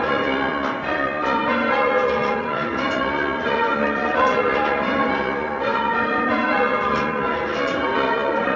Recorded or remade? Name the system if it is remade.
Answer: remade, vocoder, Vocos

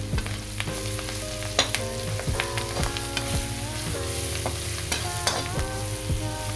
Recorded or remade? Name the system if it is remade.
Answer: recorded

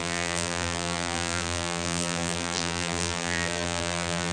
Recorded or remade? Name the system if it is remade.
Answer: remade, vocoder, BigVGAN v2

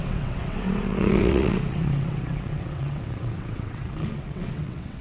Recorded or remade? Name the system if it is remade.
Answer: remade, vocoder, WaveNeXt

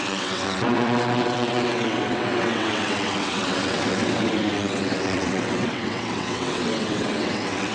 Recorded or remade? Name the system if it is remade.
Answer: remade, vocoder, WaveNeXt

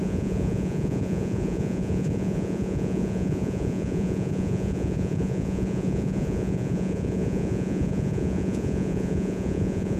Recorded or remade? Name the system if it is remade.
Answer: remade, vocoder, Vocos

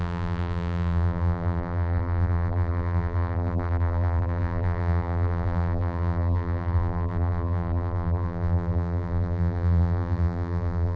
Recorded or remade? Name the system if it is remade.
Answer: remade, vocoder, BigVGAN v2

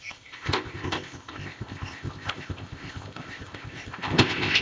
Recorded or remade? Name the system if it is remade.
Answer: remade, codec, ZipCodec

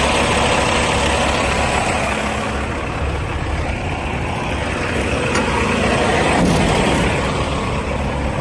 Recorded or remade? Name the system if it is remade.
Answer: recorded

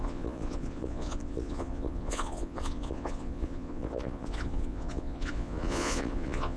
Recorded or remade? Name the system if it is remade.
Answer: remade, vocoder, Vocos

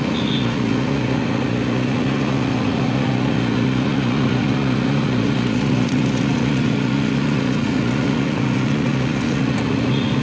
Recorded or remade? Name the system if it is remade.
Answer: remade, vocoder, Vocos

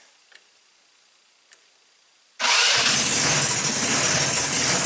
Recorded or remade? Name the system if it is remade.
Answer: recorded